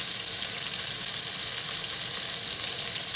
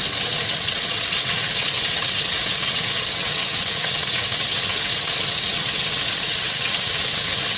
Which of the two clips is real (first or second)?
first